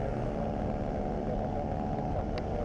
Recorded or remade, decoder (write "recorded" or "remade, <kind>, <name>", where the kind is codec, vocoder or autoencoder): recorded